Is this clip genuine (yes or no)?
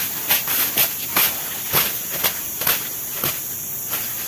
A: yes